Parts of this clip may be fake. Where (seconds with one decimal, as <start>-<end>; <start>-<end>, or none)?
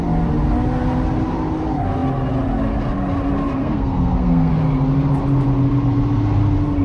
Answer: 3.6-4.5